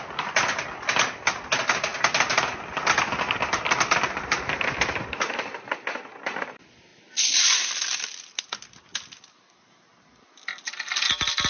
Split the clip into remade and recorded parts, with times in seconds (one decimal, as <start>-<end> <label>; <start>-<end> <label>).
0.0-11.5 recorded

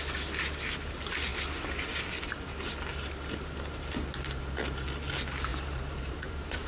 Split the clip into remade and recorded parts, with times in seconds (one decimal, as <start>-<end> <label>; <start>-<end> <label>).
0.0-5.5 recorded; 5.5-6.7 remade

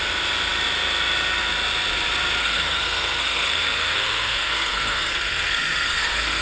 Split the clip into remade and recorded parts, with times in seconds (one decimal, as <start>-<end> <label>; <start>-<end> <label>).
0.0-2.4 recorded; 2.4-6.4 remade

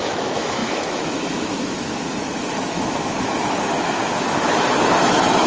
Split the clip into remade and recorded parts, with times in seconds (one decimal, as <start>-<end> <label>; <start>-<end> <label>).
0.0-5.5 remade

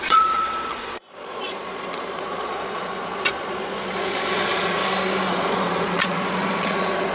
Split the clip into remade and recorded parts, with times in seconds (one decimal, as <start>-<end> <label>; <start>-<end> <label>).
0.0-4.8 remade; 4.8-5.3 recorded; 5.3-7.1 remade

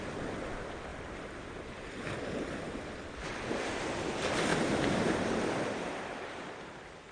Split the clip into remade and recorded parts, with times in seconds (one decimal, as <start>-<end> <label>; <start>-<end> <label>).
0.0-0.9 recorded; 0.9-3.8 remade; 3.8-7.1 recorded